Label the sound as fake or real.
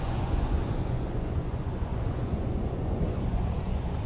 fake